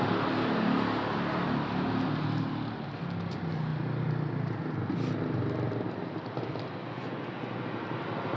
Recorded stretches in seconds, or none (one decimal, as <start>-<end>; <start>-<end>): 0.0-6.8; 7.6-8.4